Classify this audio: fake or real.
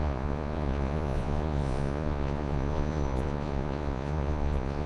fake